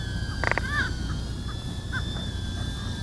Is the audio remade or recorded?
recorded